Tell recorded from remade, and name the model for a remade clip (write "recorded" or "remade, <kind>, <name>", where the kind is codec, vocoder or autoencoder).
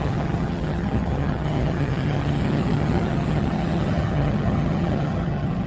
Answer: remade, vocoder, HiFi-GAN